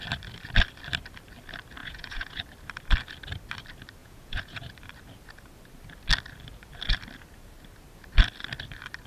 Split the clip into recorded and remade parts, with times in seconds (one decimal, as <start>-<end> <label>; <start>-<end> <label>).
0.0-1.8 recorded; 1.8-2.4 remade; 2.4-4.0 recorded; 4.0-4.7 remade; 4.7-9.1 recorded